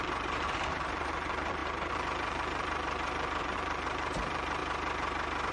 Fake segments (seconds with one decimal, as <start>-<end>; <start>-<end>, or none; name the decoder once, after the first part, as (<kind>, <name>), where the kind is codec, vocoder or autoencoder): 0.0-4.6 (vocoder, BigVGAN v2)